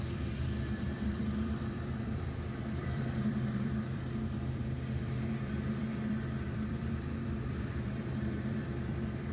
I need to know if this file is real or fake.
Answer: fake